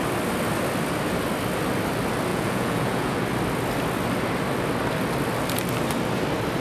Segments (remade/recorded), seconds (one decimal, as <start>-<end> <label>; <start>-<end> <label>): 0.0-2.3 recorded; 2.3-3.2 remade; 3.2-6.6 recorded